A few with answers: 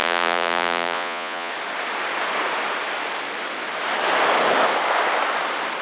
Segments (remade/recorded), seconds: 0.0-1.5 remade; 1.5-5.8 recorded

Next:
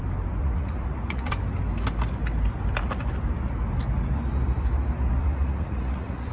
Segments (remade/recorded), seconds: 0.0-0.4 recorded; 0.4-1.3 remade; 1.3-5.2 recorded; 5.2-6.3 remade